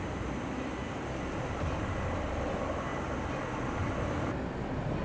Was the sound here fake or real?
real